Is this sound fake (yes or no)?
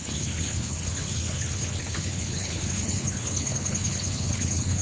yes